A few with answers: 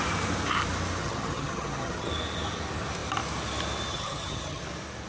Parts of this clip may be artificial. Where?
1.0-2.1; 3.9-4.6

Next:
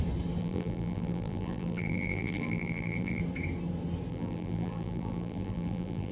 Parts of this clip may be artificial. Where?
0.4-3.2; 4.1-6.1